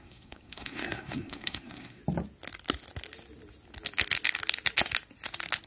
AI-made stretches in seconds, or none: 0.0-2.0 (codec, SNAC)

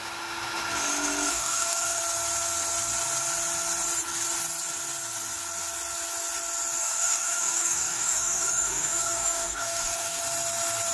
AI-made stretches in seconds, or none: 1.3-2.0 (codec, DAC); 6.8-10.2

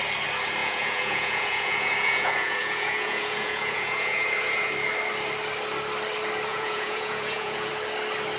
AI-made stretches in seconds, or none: 0.6-4.7 (vocoder, Vocos); 6.5-7.7